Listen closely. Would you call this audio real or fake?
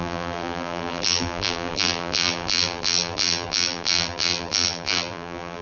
fake